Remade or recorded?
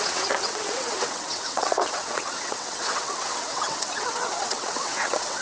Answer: remade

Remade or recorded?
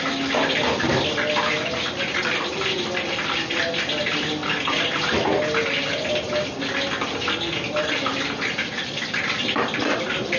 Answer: recorded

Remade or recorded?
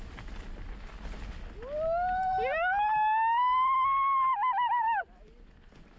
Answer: recorded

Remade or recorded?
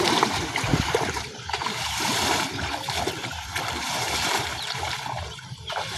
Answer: remade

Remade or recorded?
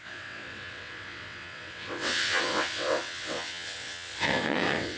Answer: remade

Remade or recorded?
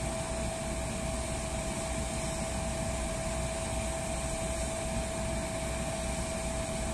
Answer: recorded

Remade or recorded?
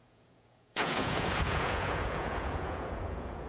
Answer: remade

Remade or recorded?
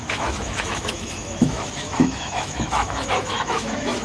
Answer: remade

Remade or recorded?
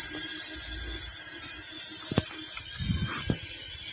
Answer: recorded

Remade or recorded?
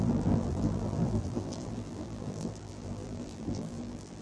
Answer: remade